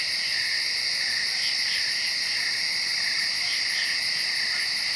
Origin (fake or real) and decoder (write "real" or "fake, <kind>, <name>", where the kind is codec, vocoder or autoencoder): real